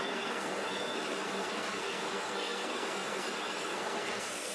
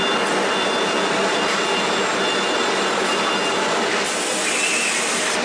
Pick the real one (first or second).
second